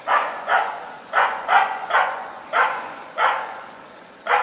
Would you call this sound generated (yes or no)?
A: yes